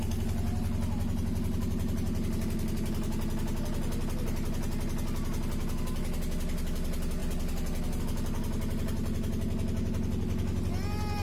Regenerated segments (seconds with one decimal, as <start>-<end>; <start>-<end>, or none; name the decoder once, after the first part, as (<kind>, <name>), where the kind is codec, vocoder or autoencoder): none